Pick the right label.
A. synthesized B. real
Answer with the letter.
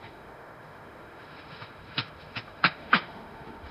A